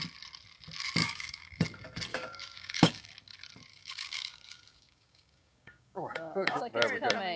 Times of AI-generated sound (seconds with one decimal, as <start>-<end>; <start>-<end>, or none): 1.0-1.6; 2.1-3.1; 3.7-6.6